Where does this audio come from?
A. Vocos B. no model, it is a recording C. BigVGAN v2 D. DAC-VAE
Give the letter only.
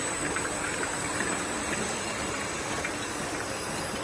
C